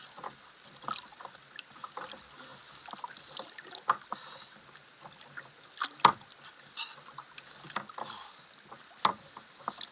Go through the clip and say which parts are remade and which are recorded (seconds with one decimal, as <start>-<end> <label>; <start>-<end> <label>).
0.0-9.9 recorded